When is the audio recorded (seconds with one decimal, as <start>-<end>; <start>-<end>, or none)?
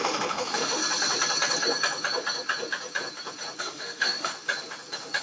0.8-3.6; 4.3-5.2